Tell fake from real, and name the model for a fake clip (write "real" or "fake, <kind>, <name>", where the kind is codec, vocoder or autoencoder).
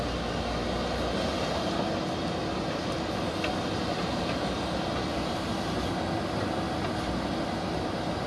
real